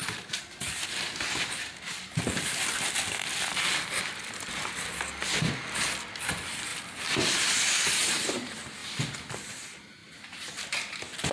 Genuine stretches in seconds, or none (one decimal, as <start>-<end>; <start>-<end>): 4.0-6.7; 7.7-8.8; 9.3-10.0; 10.9-11.3